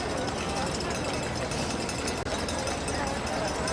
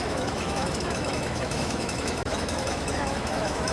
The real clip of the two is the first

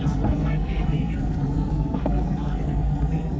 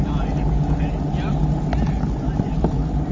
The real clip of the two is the second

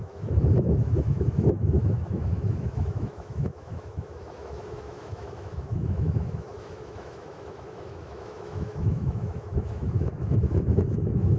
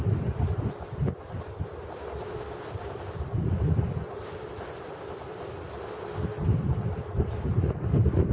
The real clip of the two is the second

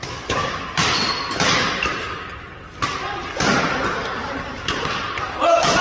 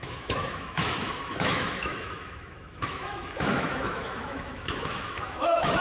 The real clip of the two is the first